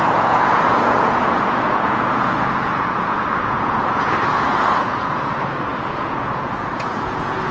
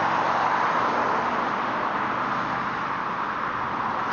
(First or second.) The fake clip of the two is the first